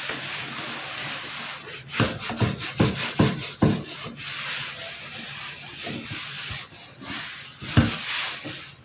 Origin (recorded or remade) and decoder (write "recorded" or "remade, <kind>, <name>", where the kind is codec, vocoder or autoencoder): recorded